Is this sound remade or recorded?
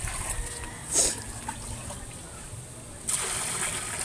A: recorded